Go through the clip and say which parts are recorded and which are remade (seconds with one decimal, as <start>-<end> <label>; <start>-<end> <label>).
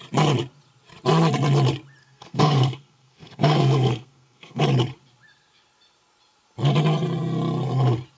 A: 0.0-2.0 recorded; 2.0-4.6 remade; 4.6-8.2 recorded